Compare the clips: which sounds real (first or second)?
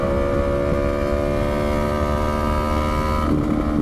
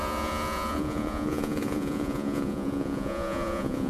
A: first